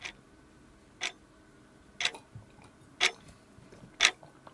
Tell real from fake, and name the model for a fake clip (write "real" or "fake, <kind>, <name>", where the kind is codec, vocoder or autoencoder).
real